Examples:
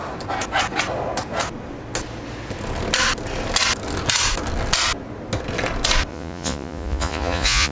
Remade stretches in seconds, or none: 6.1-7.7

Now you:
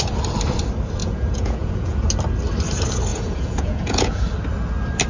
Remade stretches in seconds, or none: 1.0-2.0; 3.1-4.2